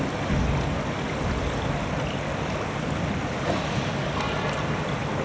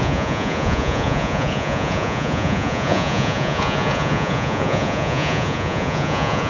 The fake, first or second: second